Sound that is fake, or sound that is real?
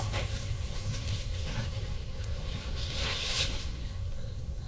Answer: fake